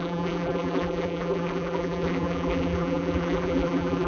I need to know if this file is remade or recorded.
remade